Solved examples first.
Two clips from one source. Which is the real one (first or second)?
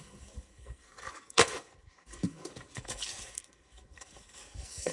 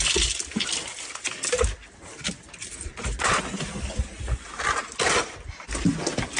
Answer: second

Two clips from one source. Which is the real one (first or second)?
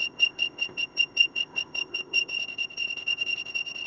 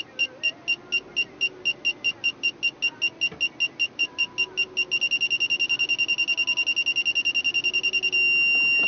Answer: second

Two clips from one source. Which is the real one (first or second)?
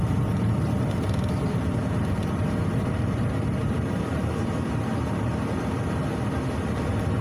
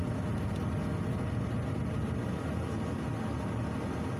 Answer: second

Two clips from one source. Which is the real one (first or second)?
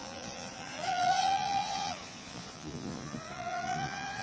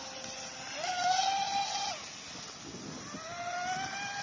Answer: second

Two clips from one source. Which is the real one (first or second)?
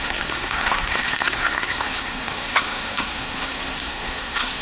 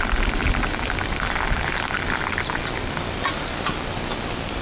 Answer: second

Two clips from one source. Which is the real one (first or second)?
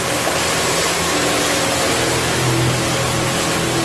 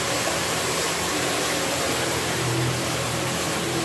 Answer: first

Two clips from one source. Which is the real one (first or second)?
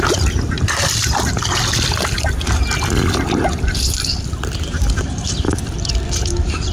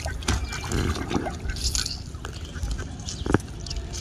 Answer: second